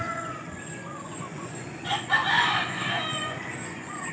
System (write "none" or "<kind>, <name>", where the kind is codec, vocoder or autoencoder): vocoder, Vocos